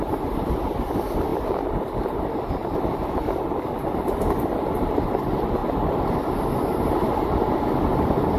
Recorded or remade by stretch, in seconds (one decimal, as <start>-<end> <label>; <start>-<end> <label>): 0.0-8.4 recorded